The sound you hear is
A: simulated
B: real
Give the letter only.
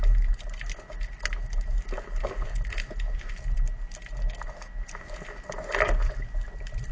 B